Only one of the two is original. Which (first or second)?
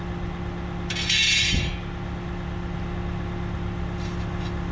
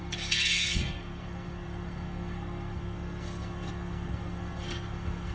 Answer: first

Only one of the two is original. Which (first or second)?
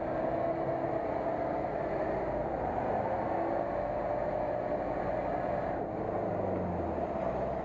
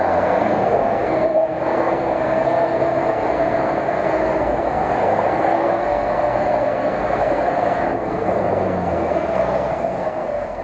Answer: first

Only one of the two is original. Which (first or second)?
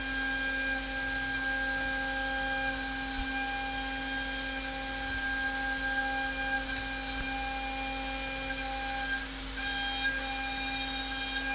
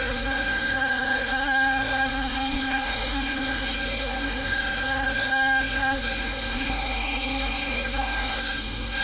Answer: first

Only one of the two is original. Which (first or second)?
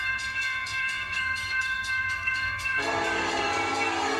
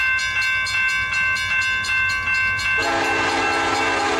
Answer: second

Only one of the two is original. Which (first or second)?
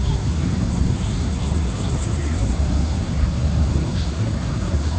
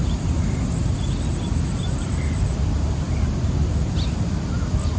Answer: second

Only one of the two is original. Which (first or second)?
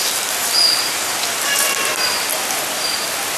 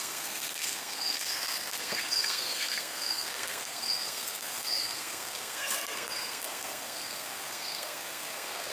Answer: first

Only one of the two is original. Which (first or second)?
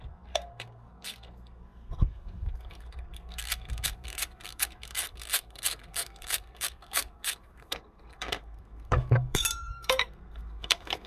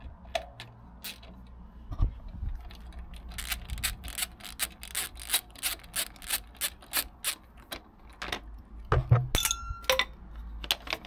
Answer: second